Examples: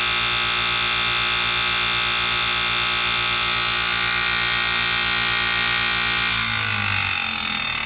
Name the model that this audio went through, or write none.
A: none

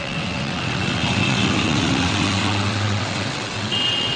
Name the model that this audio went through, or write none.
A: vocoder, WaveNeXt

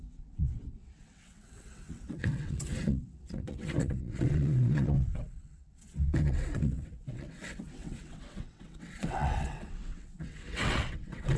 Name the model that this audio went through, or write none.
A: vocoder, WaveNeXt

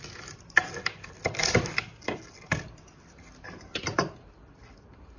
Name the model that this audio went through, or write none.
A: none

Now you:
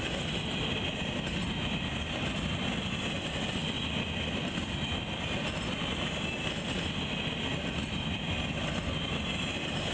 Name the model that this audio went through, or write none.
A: none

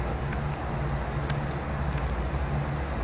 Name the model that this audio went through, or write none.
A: none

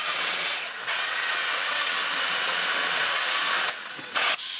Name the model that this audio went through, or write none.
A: vocoder, WaveNeXt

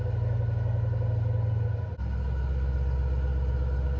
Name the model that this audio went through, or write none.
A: none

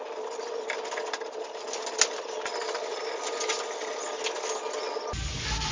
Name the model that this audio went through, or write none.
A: none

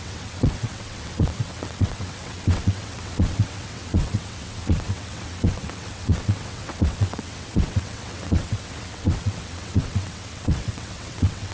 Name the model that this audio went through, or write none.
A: vocoder, WaveNeXt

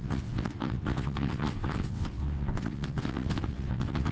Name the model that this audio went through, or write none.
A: vocoder, WaveNeXt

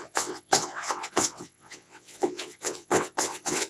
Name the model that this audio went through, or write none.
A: vocoder, WaveNeXt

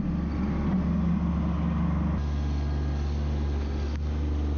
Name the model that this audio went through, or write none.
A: none